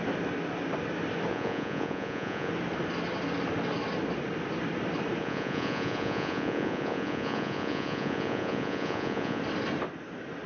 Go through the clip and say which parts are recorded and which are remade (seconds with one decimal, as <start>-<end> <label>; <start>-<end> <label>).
0.0-1.3 recorded; 1.3-2.5 remade; 2.5-5.2 recorded; 5.2-9.4 remade; 9.4-10.5 recorded

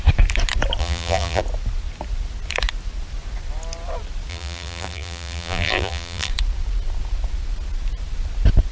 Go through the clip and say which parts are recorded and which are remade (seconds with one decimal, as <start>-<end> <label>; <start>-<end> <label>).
0.0-0.8 recorded; 0.8-1.4 remade; 1.4-4.3 recorded; 4.3-6.3 remade; 6.3-8.7 recorded

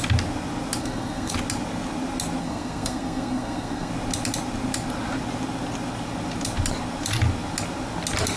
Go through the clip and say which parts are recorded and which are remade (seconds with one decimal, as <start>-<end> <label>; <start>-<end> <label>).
0.0-0.8 recorded; 0.8-1.3 remade; 1.3-2.4 recorded; 2.4-3.9 remade; 3.9-8.4 recorded